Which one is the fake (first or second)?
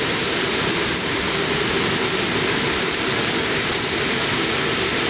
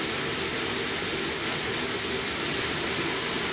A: first